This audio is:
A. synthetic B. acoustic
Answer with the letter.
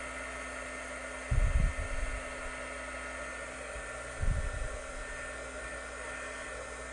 B